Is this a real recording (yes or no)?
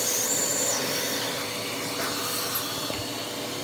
yes